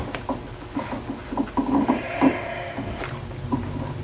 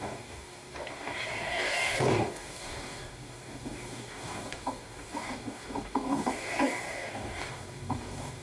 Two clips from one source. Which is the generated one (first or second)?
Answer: second